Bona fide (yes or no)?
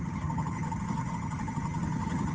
no